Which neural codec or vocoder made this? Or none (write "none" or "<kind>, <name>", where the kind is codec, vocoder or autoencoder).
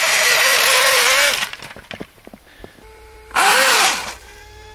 vocoder, BigVGAN v2